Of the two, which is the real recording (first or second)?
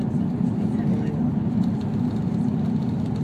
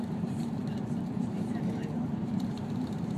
first